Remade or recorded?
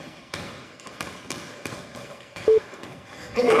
remade